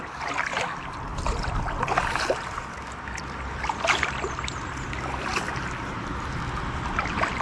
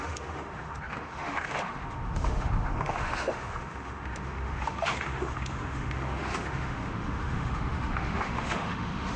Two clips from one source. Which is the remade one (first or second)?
second